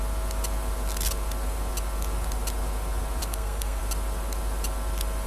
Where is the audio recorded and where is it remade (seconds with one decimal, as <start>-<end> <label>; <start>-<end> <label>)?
0.0-3.2 recorded; 3.2-3.8 remade; 3.8-5.3 recorded